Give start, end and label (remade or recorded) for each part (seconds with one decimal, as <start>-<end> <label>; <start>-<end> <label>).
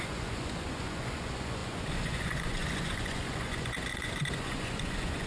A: 0.0-5.3 remade